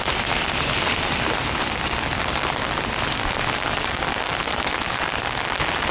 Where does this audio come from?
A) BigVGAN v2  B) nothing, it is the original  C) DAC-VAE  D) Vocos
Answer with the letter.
A